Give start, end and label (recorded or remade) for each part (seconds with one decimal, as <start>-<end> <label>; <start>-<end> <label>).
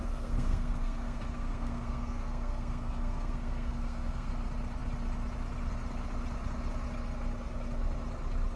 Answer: 0.0-4.3 remade; 4.3-8.6 recorded